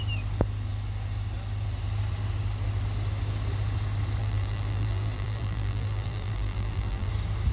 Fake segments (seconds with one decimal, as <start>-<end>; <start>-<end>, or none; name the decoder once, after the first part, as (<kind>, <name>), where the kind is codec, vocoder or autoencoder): 4.2-7.1 (vocoder, BigVGAN v2)